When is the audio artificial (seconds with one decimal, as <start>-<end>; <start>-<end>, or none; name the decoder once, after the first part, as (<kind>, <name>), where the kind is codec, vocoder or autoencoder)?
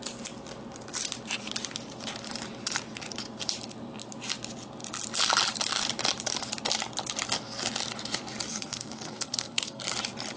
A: 8.5-9.8 (codec, SNAC)